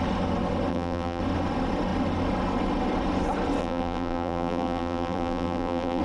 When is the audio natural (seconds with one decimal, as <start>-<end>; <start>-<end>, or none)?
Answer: 0.0-0.7; 1.2-3.6